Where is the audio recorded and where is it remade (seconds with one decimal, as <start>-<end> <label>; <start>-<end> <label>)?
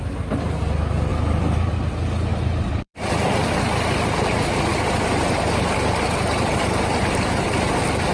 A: 0.0-1.1 recorded; 1.1-1.7 remade; 1.7-2.3 recorded; 2.3-3.5 remade; 3.5-4.7 recorded; 4.7-8.1 remade